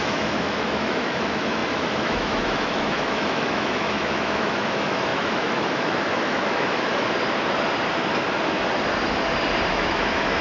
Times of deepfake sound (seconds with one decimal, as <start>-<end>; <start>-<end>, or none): 0.0-6.9; 9.7-10.4